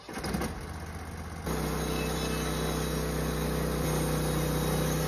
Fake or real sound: real